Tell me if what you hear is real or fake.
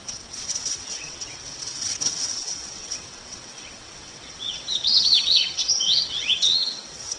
fake